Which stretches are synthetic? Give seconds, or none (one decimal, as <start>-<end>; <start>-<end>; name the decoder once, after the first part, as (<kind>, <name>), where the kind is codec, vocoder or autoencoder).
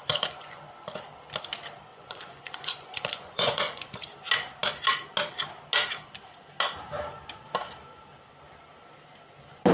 0.0-0.6 (vocoder, Vocos); 1.9-3.9